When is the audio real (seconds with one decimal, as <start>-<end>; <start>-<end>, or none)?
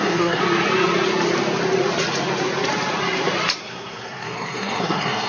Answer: 0.4-3.6